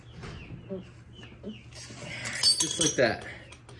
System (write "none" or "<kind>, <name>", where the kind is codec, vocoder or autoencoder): none